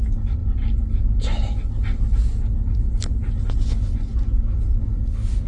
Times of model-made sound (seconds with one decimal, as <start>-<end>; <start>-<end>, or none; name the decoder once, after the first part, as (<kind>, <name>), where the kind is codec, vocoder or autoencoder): none